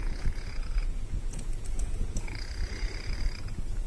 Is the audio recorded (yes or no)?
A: no